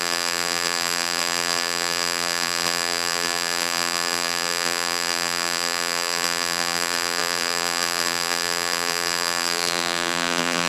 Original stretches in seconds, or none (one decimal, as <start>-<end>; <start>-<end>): none